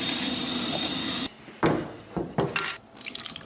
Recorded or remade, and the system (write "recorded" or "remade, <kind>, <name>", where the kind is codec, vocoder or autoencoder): recorded